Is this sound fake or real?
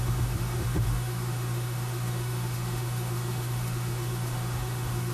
fake